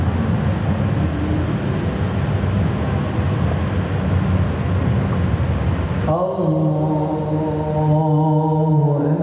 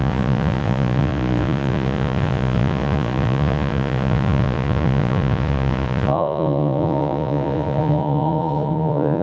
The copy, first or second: second